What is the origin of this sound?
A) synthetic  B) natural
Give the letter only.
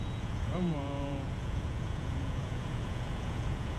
A